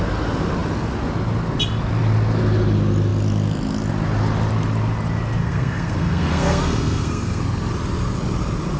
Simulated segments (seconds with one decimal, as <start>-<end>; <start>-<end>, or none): 5.4-7.4